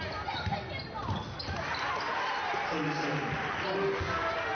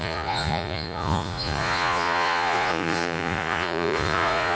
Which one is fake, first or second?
second